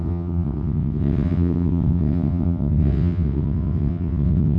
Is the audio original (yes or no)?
no